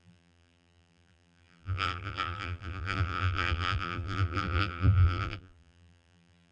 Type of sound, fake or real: fake